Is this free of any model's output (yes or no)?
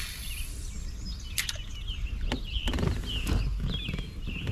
yes